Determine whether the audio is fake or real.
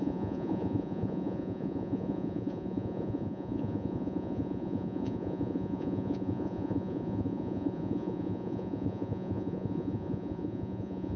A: fake